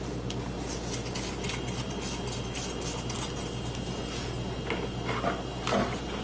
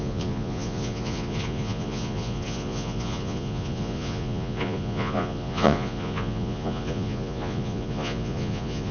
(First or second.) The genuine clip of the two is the first